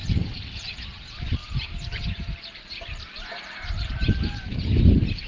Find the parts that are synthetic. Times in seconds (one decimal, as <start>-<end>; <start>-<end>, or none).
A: 0.0-0.7; 1.4-4.6